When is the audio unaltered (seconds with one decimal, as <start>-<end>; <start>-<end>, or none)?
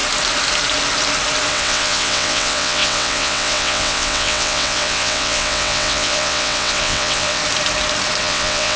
0.0-1.5; 7.4-8.2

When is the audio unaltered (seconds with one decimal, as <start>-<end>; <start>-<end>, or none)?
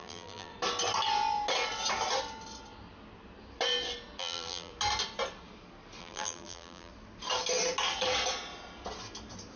0.5-4.2; 4.7-6.0; 6.9-9.6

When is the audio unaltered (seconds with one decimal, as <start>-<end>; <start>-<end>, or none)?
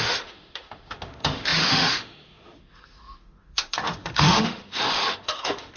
none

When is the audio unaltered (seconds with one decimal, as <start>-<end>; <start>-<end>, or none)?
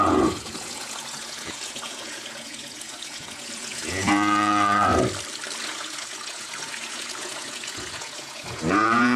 4.9-5.6